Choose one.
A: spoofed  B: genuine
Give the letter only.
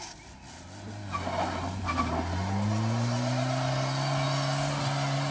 B